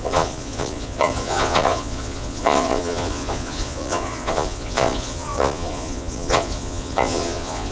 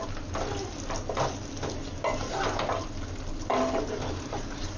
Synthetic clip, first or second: first